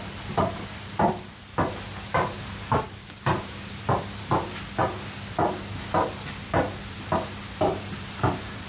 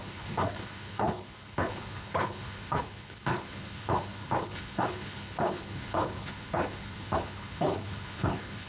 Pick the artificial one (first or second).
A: second